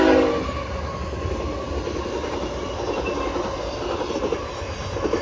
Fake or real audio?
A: real